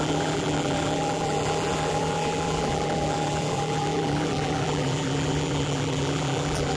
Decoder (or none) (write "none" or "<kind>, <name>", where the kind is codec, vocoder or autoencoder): vocoder, BigVGAN v2